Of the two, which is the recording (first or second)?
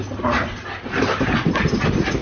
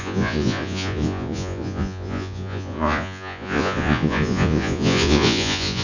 first